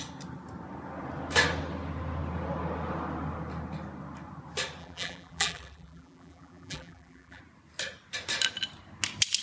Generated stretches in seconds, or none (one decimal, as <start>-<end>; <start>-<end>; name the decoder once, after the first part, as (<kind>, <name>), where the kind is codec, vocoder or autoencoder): 4.8-7.4 (vocoder, BigVGAN v2)

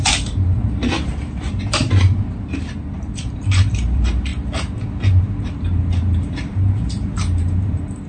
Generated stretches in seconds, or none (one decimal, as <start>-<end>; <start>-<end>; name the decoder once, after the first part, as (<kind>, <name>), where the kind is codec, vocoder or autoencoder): 0.0-4.3 (vocoder, BigVGAN v2); 5.4-8.1

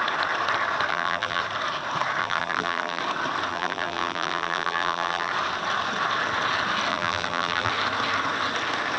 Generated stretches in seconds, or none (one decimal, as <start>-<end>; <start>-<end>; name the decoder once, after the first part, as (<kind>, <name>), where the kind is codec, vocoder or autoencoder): 0.9-1.4 (vocoder, BigVGAN v2); 2.2-3.0; 3.5-5.3; 6.9-7.7

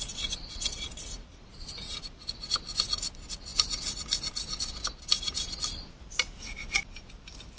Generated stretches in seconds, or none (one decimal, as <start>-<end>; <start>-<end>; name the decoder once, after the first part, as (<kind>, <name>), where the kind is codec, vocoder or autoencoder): 1.3-2.3 (vocoder, BigVGAN v2)